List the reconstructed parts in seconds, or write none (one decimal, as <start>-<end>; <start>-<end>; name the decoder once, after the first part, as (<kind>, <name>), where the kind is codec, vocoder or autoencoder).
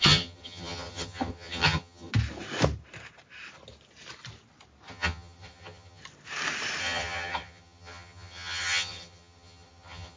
0.0-2.1 (vocoder, HiFi-GAN); 4.9-6.0; 6.8-10.2